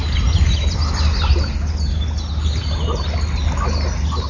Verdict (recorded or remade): recorded